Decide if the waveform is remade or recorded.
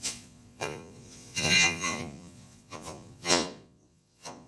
remade